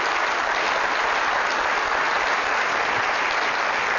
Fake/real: real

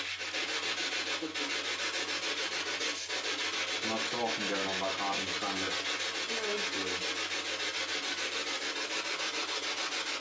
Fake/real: real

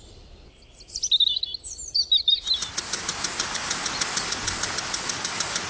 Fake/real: real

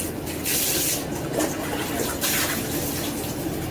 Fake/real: real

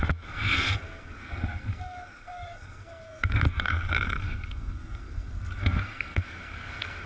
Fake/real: fake